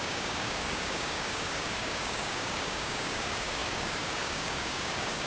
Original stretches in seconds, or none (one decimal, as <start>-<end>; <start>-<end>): none